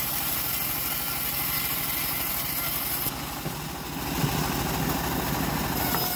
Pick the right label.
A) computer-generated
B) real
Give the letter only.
B